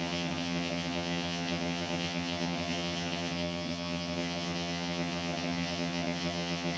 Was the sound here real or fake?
fake